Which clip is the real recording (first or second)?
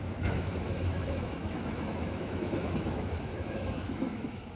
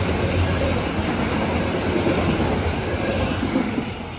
second